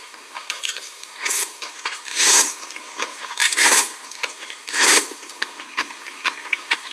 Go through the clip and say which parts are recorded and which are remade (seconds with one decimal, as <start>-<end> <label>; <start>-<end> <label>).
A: 0.0-6.9 remade